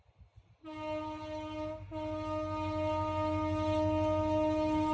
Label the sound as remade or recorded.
recorded